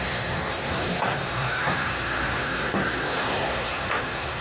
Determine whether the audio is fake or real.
fake